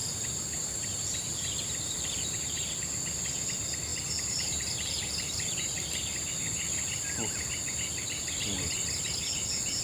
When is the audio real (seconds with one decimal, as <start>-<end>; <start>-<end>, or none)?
3.2-3.9; 6.3-9.8